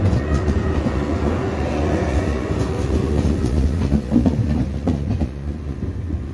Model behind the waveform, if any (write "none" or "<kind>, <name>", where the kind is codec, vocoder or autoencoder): vocoder, Vocos